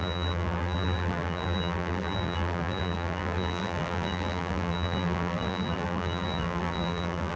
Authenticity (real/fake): fake